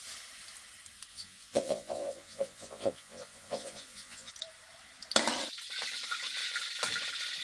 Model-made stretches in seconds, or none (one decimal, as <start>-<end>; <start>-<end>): 1.1-4.3